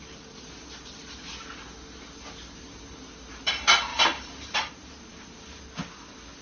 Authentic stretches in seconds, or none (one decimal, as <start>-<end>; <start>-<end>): 0.0-3.9; 5.6-6.4